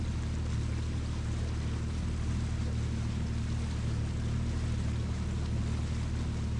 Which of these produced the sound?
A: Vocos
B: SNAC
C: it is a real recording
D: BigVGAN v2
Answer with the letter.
C